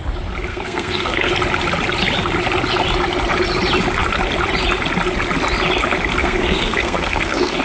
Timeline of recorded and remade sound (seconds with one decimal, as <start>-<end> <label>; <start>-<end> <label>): 0.0-0.5 recorded; 0.5-1.3 remade; 1.3-6.2 recorded; 6.2-7.6 remade